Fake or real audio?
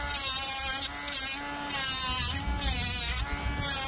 real